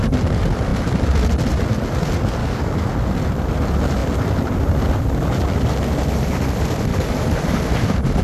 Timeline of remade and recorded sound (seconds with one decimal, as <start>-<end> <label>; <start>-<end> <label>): 0.0-2.4 recorded; 2.4-2.9 remade; 2.9-6.9 recorded; 6.9-7.6 remade; 7.6-8.2 recorded